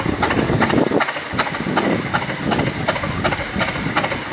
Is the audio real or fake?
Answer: real